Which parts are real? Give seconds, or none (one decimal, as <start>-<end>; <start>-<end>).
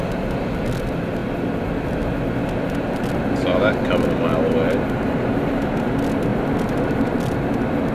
0.0-7.9